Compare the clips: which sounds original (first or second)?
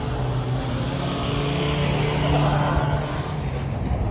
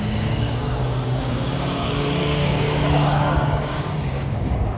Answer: first